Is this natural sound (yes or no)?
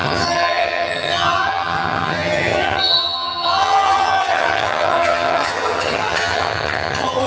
no